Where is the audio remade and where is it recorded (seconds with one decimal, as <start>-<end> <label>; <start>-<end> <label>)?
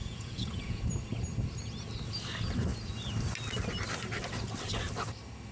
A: 0.0-0.8 remade; 0.8-5.5 recorded